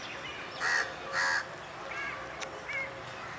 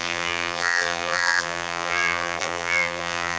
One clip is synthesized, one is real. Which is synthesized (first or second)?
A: second